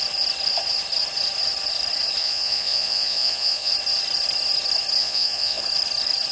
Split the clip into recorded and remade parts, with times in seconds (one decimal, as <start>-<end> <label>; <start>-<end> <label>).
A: 0.0-2.2 recorded; 2.2-3.7 remade; 3.7-5.0 recorded; 5.0-5.6 remade; 5.6-6.3 recorded